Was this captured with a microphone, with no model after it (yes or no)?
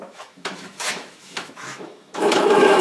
no